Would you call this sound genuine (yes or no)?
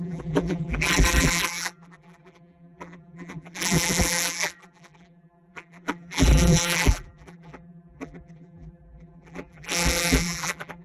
no